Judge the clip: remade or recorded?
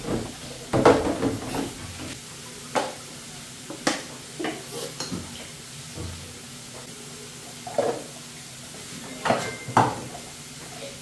recorded